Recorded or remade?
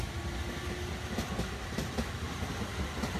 recorded